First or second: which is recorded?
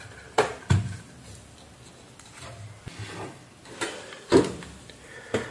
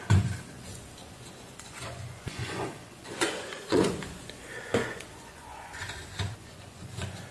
first